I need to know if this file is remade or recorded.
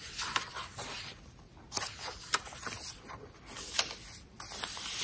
recorded